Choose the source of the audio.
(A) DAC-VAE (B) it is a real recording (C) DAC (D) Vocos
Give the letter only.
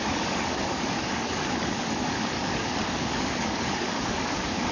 C